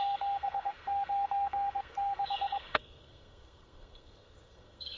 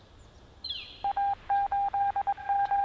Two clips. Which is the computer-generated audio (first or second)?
first